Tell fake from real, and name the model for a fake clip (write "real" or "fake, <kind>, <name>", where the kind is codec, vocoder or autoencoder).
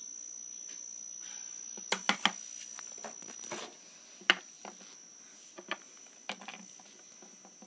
real